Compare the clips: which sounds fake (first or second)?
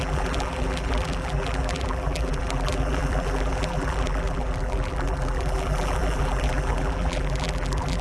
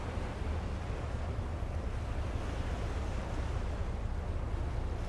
first